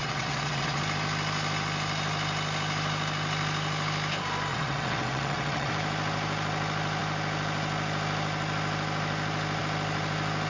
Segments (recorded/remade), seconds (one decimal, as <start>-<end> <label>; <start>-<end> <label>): 0.0-0.8 remade; 0.8-4.5 recorded; 4.5-5.7 remade; 5.7-10.5 recorded